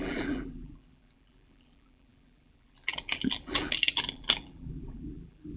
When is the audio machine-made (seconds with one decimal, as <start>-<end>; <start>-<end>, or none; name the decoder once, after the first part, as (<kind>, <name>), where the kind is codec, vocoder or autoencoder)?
0.0-5.6 (vocoder, BigVGAN v2)